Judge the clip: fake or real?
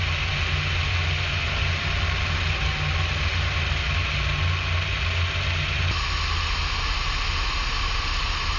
real